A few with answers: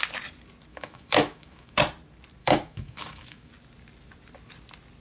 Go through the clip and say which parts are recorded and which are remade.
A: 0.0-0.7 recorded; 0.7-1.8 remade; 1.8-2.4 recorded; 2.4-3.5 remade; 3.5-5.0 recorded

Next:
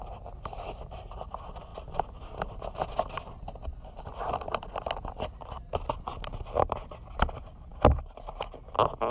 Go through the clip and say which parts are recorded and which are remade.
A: 0.0-9.1 recorded